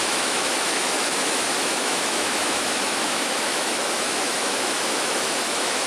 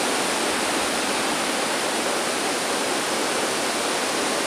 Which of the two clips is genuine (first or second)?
second